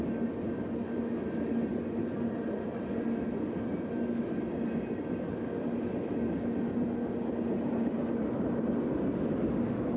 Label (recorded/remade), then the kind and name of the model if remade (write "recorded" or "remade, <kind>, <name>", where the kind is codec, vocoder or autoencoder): recorded